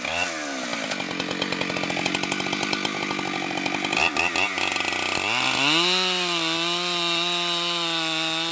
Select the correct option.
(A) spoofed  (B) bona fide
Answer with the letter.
B